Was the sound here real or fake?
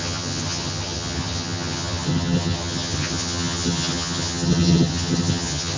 fake